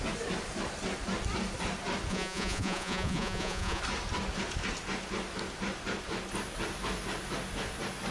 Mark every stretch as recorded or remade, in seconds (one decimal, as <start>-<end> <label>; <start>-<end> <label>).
0.0-2.1 recorded; 2.1-3.8 remade; 3.8-8.1 recorded